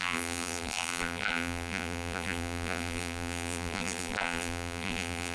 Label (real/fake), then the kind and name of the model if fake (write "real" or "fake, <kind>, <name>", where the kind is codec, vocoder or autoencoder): fake, vocoder, BigVGAN v2